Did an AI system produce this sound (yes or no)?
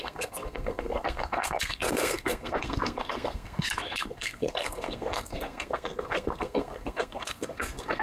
yes